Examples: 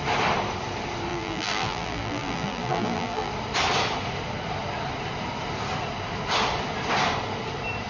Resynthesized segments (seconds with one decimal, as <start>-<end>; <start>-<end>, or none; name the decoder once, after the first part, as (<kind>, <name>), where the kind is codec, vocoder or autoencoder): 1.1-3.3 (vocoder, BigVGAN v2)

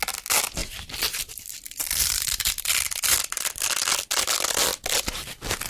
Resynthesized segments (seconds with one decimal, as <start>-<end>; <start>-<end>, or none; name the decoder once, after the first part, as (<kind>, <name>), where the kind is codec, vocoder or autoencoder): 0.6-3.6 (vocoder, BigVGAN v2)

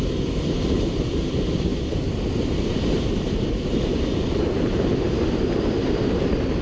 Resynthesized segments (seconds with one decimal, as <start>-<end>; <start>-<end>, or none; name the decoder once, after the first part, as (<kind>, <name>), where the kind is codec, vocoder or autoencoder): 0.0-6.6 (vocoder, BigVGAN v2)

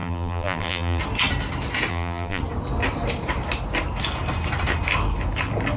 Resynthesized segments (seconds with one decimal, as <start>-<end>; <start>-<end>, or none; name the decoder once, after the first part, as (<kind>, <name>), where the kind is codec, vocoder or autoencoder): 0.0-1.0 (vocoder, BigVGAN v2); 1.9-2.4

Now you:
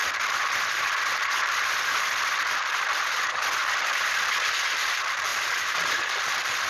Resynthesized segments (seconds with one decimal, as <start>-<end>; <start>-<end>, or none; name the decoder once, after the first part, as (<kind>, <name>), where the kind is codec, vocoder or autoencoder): 0.0-2.8 (vocoder, BigVGAN v2); 3.6-4.3; 5.3-6.7